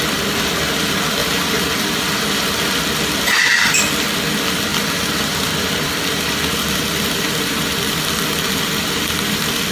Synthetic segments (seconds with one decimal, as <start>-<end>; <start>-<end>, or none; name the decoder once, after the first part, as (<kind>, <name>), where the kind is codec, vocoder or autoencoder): 4.7-7.4 (vocoder, BigVGAN v2)